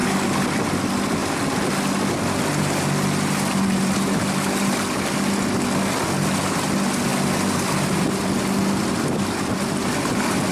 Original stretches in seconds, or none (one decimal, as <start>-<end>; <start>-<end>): 0.0-10.5